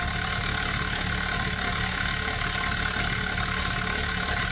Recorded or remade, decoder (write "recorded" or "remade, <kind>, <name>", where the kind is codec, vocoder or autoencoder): recorded